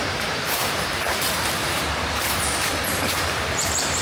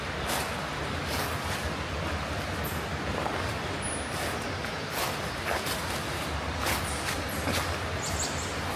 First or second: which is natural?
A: second